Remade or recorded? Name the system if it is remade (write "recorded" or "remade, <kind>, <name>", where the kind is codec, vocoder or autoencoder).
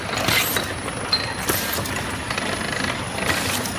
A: recorded